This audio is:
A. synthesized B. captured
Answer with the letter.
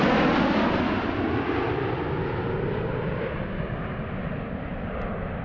B